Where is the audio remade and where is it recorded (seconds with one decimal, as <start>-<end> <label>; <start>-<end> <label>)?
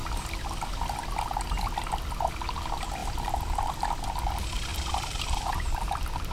0.0-3.0 recorded; 3.0-3.7 remade; 3.7-4.7 recorded; 4.7-6.3 remade